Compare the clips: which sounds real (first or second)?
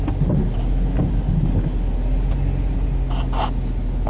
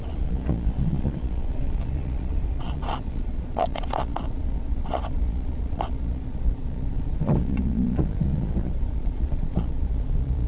first